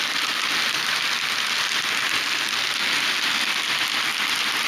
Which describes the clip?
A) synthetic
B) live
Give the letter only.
B